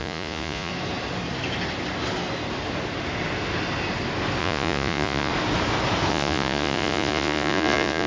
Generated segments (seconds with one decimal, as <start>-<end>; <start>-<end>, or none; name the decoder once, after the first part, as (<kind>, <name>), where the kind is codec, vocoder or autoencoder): 0.0-0.7 (vocoder, Vocos); 4.4-5.3; 6.1-8.1